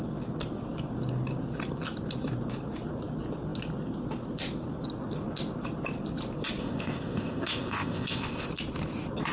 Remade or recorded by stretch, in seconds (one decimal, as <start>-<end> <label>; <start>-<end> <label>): 0.0-6.6 recorded; 6.6-8.5 remade; 8.5-9.3 recorded